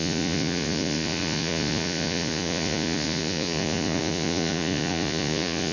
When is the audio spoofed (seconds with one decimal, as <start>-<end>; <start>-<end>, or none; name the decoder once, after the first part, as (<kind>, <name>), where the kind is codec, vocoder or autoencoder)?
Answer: 0.0-5.7 (vocoder, Vocos)